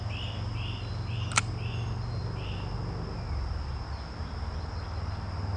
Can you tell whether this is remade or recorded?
recorded